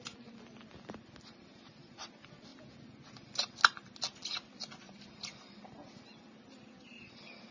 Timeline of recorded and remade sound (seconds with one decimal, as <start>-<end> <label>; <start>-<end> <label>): 0.0-7.5 recorded